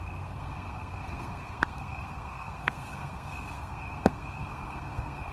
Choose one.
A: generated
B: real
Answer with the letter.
A